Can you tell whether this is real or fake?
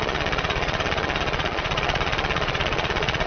fake